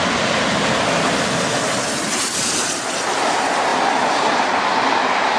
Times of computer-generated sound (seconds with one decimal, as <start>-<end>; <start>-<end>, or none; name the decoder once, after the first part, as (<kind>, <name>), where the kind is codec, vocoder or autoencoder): 3.7-4.4 (vocoder, BigVGAN v2)